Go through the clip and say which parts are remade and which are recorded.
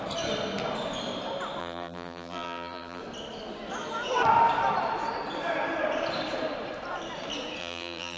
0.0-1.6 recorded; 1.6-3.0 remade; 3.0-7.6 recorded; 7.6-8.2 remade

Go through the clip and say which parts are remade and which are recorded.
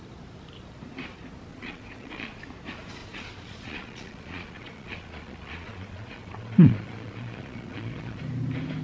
0.0-1.5 recorded; 1.5-2.4 remade; 2.4-3.0 recorded; 3.0-8.2 remade; 8.2-8.8 recorded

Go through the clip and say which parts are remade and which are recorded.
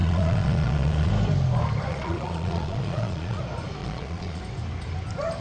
0.0-1.1 remade; 1.1-1.9 recorded; 1.9-3.4 remade; 3.4-3.8 recorded; 3.8-4.4 remade; 4.4-5.4 recorded